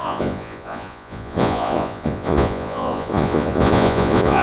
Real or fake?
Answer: fake